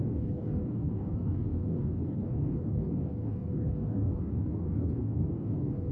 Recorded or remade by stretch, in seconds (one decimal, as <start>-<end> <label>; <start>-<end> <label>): 0.0-5.9 remade

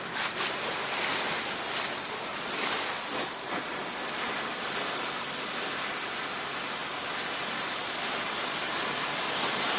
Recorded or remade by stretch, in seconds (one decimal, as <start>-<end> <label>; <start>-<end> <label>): 0.0-9.8 recorded

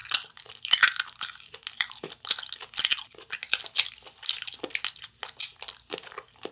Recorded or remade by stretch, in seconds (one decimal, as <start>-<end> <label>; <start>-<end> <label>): 0.0-6.5 recorded

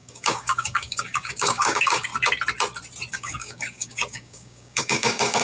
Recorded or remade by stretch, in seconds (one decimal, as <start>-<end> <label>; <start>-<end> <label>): 0.0-2.1 remade; 2.1-3.1 recorded; 3.1-5.4 remade

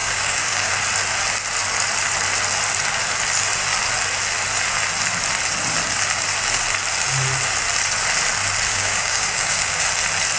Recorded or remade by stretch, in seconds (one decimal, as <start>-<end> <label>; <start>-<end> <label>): 0.0-0.7 remade; 0.7-8.7 recorded; 8.7-9.9 remade; 9.9-10.4 recorded